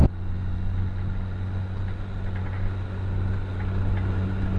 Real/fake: real